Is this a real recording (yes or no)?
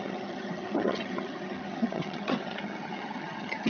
no